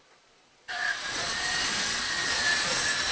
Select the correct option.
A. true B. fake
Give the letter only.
B